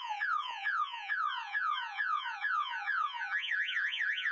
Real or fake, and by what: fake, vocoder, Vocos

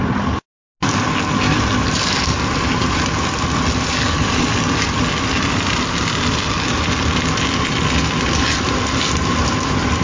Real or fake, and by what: real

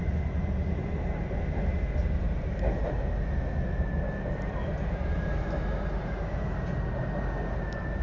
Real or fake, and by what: real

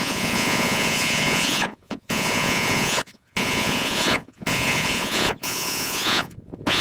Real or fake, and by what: fake, vocoder, Vocos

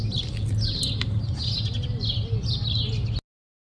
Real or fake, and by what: real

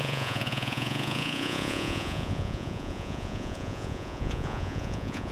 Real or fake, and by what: fake, vocoder, Vocos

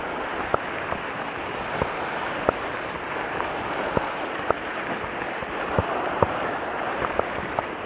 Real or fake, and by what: real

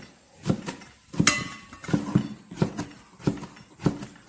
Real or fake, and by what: real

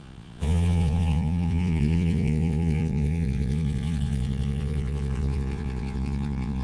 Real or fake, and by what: fake, vocoder, Vocos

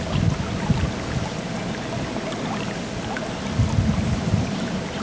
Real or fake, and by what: real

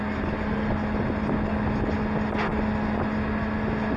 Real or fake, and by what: real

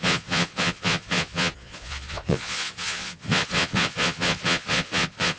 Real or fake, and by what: fake, vocoder, Vocos